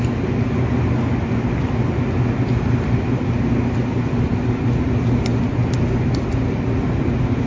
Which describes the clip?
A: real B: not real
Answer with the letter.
A